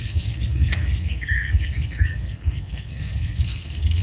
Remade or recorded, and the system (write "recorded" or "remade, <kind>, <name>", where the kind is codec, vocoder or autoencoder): remade, codec, SNAC